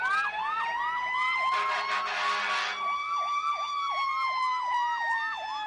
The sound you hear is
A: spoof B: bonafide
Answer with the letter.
B